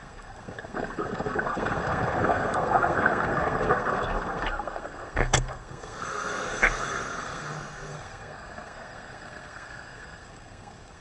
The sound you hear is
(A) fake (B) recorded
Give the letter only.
A